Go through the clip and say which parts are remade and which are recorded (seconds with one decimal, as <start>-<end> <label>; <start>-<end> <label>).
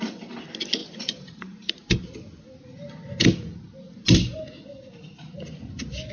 0.0-0.8 recorded; 0.8-1.7 remade; 1.7-6.1 recorded